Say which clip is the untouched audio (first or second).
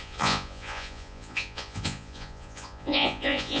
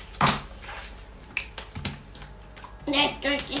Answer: second